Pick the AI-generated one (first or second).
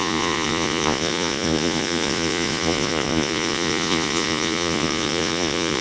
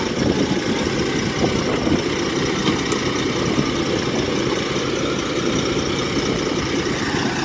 first